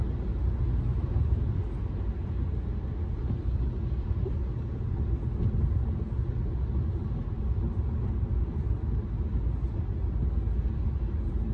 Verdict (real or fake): real